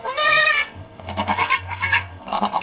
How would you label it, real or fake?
fake